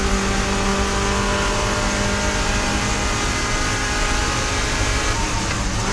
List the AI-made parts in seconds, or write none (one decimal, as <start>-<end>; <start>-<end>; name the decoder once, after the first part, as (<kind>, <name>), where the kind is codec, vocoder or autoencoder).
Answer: none